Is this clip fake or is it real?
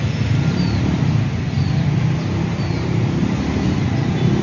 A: real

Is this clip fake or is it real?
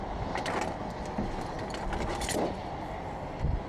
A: real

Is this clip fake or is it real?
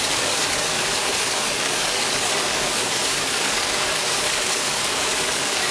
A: fake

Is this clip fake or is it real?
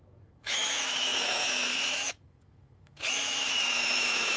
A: fake